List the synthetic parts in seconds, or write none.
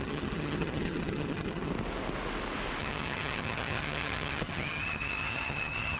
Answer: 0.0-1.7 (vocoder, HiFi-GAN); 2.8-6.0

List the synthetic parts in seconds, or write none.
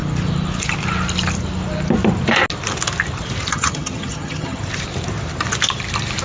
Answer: 3.5-4.6 (vocoder, HiFi-GAN)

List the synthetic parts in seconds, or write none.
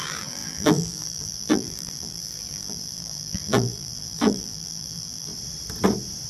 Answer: 0.0-5.3 (vocoder, BigVGAN v2)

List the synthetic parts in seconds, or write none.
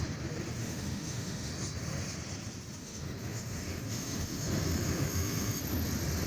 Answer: 0.6-1.5 (autoencoder, DAC-VAE); 2.8-5.6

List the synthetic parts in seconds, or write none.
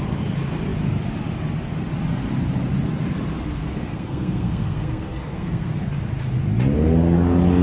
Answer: 3.6-5.7 (codec, SNAC)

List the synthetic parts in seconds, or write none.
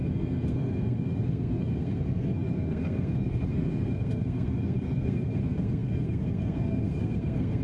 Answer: 0.0-7.6 (codec, SNAC)